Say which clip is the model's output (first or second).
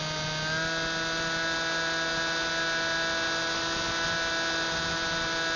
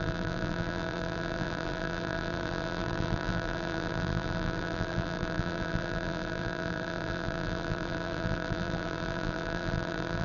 second